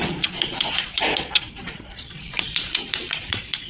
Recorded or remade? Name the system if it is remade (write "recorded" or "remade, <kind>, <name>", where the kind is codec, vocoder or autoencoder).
remade, vocoder, Vocos